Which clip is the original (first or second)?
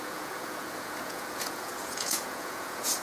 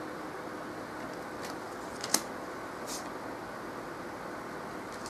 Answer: second